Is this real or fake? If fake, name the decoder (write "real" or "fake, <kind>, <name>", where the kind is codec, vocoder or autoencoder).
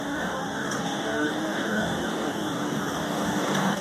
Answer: fake, codec, DAC